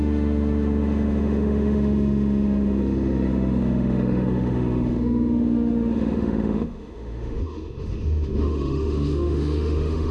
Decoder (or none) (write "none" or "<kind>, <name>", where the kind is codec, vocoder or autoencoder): autoencoder, DAC-VAE